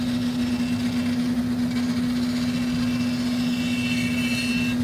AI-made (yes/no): no